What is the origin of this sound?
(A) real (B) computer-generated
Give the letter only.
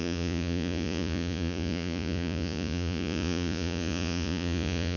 B